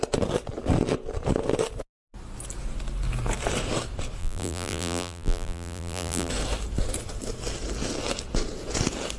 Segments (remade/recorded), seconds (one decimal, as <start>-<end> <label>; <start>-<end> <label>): 0.0-4.2 recorded; 4.2-6.3 remade; 6.3-9.2 recorded